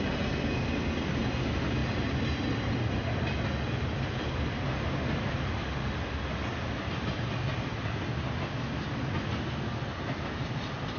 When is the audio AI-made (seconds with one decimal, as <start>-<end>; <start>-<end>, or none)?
none